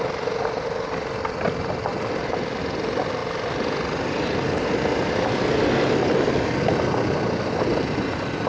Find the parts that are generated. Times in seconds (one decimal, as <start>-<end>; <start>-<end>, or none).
none